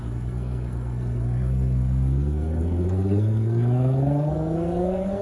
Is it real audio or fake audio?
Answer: fake